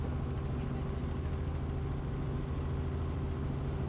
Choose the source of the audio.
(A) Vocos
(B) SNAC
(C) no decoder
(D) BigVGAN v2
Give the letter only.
C